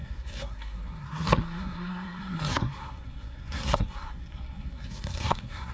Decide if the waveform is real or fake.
fake